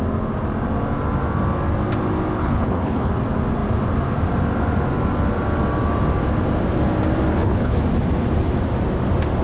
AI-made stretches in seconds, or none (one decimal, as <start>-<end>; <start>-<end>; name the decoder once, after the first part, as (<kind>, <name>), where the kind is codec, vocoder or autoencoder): 2.4-3.1 (codec, HILCodec); 7.3-7.8